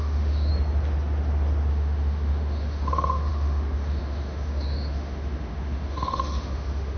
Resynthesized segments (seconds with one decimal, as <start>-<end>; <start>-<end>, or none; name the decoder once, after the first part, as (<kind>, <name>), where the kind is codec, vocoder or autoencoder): 0.0-0.5 (autoencoder, DAC-VAE); 1.7-7.0